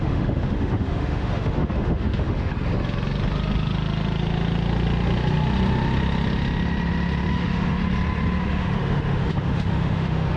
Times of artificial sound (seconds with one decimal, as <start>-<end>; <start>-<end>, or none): 0.0-2.5; 7.3-7.8; 8.4-10.4